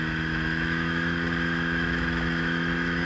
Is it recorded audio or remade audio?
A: remade